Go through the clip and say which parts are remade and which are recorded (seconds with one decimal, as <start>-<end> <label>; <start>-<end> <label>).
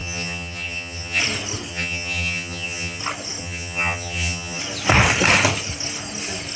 0.0-1.2 remade; 1.2-1.7 recorded; 1.7-3.0 remade; 3.0-3.4 recorded; 3.4-4.6 remade; 4.6-6.6 recorded